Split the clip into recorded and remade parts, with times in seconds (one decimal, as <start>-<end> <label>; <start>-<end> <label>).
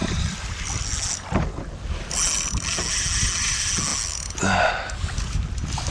0.0-5.9 recorded